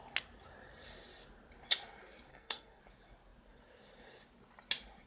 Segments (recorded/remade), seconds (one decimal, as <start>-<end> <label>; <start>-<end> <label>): 0.0-2.3 recorded; 2.3-2.8 remade; 2.8-5.1 recorded